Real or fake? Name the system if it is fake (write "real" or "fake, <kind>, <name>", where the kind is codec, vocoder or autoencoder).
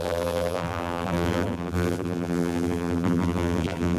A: fake, vocoder, BigVGAN v2